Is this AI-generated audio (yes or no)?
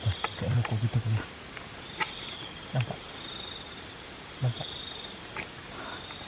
yes